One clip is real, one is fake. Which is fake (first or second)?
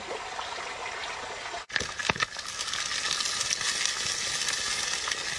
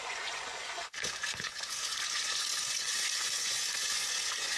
second